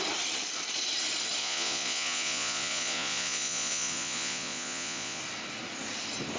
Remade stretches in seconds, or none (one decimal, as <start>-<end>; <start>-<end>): 1.4-5.2